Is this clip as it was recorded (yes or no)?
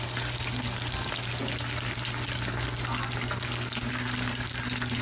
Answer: yes